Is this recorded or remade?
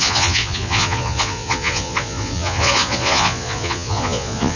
remade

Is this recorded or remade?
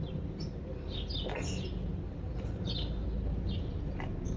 recorded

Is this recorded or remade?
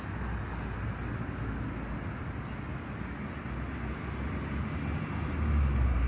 recorded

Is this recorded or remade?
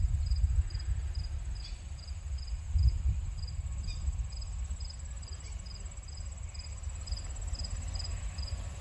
recorded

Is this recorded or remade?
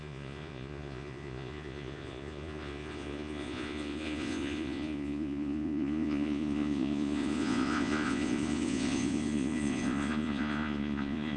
remade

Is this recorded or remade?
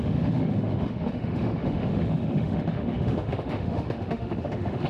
remade